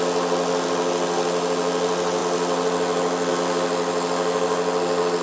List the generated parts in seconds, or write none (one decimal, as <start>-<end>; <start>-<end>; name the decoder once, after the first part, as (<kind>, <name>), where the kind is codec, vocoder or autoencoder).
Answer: none